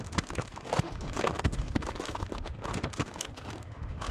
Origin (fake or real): fake